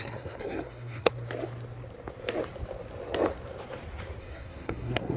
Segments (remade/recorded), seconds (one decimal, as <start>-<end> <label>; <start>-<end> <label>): 0.0-1.1 remade; 1.1-4.2 recorded; 4.2-5.2 remade